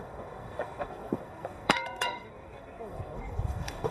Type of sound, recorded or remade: remade